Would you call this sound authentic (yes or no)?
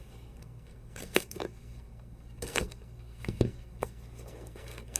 no